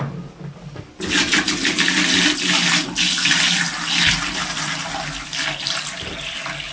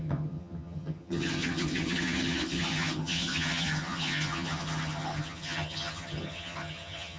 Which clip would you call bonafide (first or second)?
first